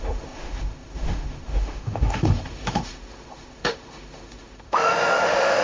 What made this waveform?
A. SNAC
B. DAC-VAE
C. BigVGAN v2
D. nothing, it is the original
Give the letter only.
B